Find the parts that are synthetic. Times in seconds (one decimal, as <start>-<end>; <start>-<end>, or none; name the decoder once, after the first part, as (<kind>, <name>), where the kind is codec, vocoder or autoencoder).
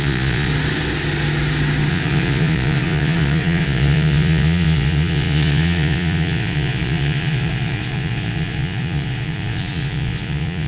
0.0-0.5 (vocoder, Vocos); 1.9-10.7